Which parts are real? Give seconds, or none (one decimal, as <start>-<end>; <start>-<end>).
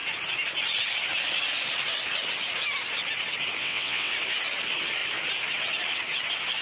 0.0-3.6; 4.1-6.6